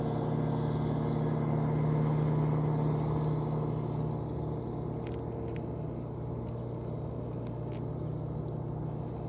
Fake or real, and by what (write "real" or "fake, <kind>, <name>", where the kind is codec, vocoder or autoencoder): real